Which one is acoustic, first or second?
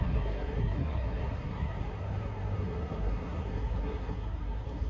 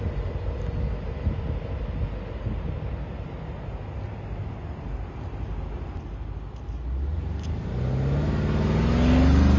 second